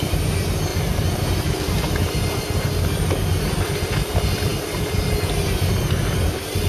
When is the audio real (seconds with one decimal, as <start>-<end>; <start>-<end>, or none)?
0.0-0.7; 2.2-6.7